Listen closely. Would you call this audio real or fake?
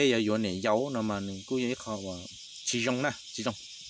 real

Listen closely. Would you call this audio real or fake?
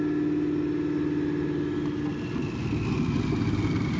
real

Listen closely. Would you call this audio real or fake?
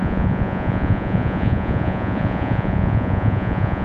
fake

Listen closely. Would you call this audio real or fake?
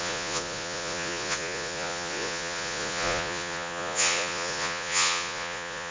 fake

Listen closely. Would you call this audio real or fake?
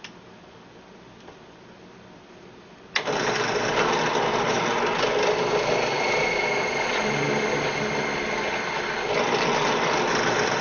real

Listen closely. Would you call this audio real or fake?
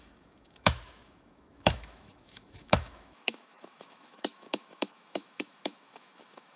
fake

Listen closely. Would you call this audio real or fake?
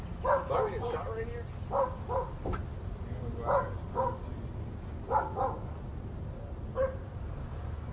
real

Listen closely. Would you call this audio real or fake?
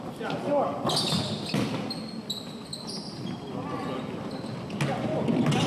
real